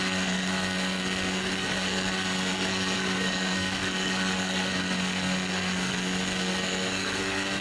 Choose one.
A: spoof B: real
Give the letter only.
A